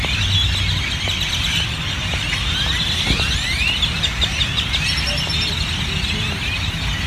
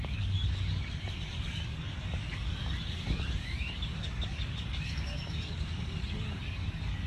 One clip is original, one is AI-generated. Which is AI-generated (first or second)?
second